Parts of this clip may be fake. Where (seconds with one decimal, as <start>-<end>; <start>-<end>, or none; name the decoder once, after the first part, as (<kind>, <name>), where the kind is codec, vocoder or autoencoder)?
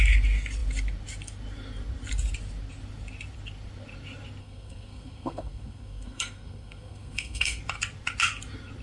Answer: 4.4-7.6 (codec, SNAC)